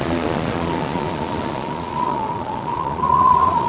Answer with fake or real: fake